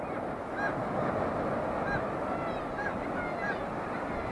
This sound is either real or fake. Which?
real